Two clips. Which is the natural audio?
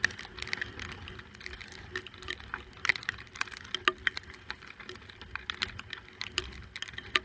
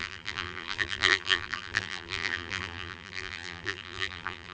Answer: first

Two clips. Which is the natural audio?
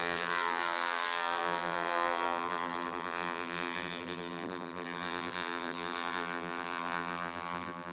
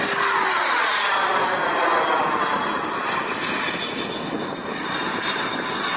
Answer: second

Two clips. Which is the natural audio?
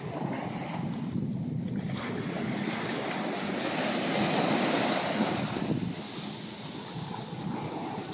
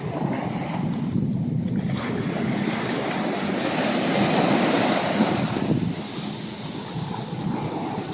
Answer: first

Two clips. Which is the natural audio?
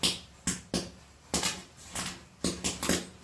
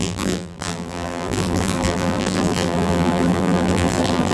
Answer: first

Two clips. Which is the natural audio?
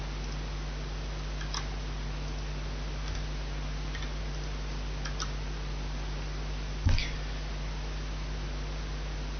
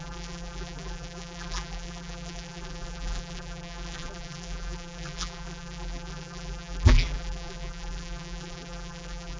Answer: first